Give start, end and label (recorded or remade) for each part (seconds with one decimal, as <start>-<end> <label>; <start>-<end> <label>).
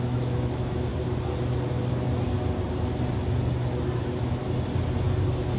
0.0-0.9 remade; 0.9-4.0 recorded; 4.0-4.4 remade; 4.4-5.6 recorded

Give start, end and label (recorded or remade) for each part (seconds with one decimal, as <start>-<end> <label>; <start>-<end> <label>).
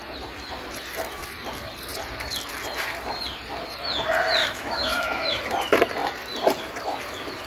0.0-4.4 recorded; 4.4-5.4 remade; 5.4-7.5 recorded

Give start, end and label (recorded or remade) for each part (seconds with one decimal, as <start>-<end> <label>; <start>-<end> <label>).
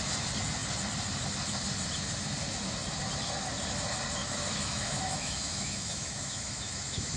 0.0-4.2 recorded; 4.2-7.2 remade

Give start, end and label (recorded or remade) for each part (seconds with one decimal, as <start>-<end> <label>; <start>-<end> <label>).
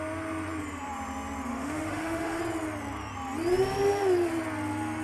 0.0-1.5 recorded; 1.5-2.4 remade; 2.4-5.0 recorded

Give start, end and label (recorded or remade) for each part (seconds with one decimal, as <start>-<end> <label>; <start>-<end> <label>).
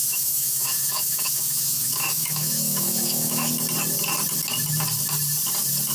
0.0-3.5 remade; 3.5-5.9 recorded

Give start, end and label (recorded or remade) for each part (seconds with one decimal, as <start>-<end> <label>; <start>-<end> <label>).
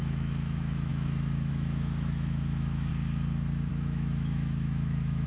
0.0-2.9 remade; 2.9-3.7 recorded; 3.7-5.3 remade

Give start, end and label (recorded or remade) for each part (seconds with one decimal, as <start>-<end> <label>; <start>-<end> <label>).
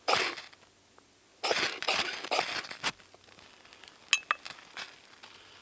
0.0-5.6 recorded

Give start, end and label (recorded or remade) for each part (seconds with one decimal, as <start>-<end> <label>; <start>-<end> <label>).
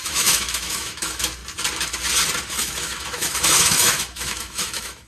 0.0-1.4 remade; 1.4-2.5 recorded; 2.5-5.1 remade